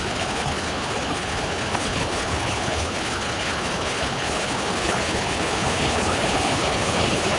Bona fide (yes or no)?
no